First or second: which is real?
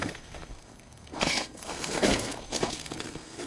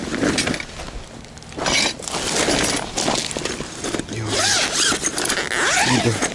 second